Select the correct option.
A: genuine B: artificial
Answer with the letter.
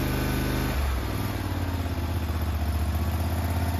A